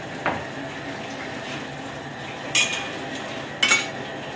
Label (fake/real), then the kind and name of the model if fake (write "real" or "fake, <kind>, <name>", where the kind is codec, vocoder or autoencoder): real